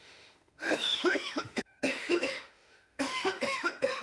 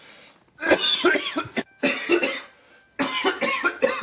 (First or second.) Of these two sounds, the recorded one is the second